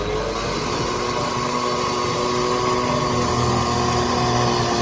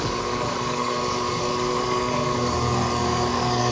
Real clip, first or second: first